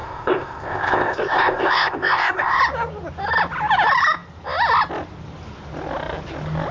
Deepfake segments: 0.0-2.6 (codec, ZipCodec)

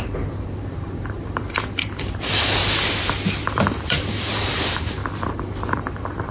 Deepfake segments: 0.0-2.6 (vocoder, BigVGAN v2); 3.5-5.0; 5.7-6.3

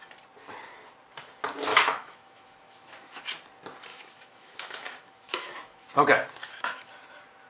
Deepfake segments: 1.7-3.2 (autoencoder, DAC-VAE); 3.9-5.9; 6.4-6.9

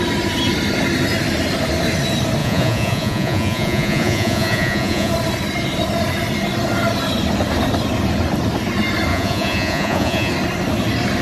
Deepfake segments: 2.4-5.1 (vocoder, Vocos); 9.1-10.3

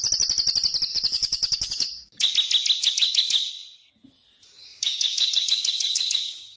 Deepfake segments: 0.9-2.3 (codec, DAC); 2.8-3.5; 4.7-6.6

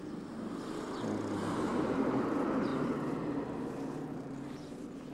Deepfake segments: none